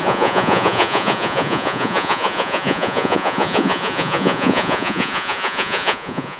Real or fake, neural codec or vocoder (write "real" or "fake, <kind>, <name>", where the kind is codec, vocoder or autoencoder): fake, vocoder, Vocos